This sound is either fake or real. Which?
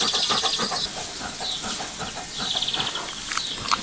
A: real